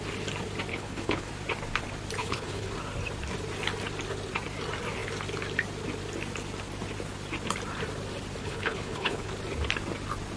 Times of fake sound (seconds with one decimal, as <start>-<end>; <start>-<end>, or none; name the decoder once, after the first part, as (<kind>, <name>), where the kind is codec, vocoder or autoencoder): 0.7-1.3 (codec, HILCodec); 2.2-2.7; 8.4-9.3